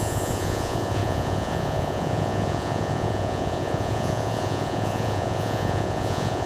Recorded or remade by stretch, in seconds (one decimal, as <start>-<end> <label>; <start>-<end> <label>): 0.0-6.5 remade